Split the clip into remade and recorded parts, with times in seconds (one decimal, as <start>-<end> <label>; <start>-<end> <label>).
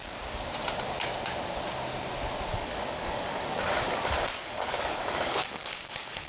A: 0.0-2.5 recorded; 2.5-6.3 remade